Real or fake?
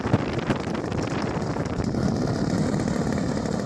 real